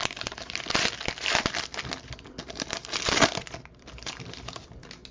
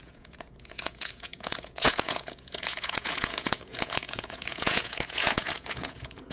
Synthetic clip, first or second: second